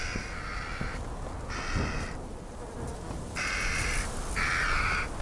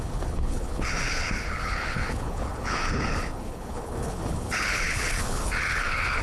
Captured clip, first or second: first